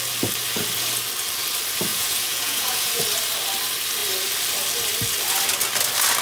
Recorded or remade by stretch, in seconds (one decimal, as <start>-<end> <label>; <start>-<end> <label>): 0.0-1.9 recorded; 1.9-3.0 remade; 3.0-6.2 recorded